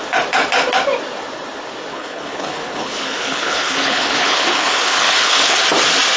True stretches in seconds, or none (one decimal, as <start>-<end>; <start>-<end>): 0.0-1.9; 5.6-6.2